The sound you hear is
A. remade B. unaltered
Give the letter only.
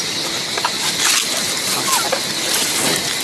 B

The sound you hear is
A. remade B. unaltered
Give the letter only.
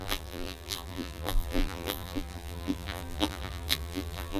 A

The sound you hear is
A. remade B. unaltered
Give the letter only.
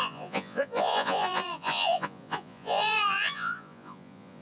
A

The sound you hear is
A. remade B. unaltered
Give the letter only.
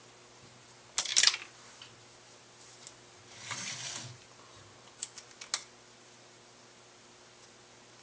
B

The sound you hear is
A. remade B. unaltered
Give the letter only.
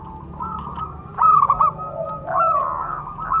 B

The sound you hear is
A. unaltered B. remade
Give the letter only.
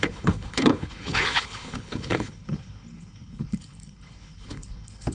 B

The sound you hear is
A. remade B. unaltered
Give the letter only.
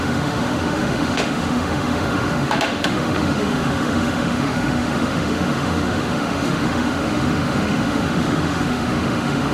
A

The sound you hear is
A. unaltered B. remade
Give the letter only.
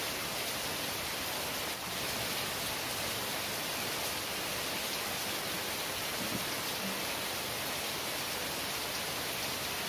A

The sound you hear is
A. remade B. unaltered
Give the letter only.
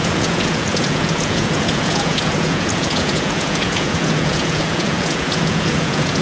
A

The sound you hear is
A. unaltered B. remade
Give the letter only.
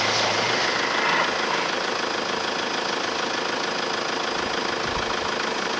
A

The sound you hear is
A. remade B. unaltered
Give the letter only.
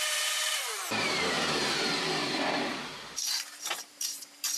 A